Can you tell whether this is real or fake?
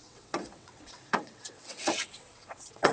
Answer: fake